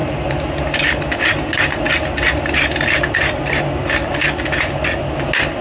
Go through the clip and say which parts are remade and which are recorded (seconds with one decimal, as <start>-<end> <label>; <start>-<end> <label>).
0.0-5.6 recorded